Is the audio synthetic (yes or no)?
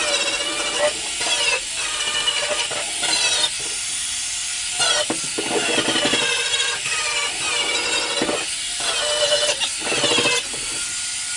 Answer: no